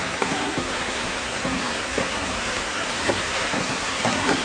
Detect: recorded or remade remade